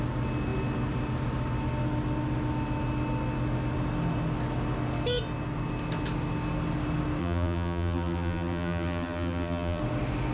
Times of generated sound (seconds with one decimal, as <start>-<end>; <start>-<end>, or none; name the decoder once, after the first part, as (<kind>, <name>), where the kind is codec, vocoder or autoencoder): 7.2-9.8 (vocoder, BigVGAN v2)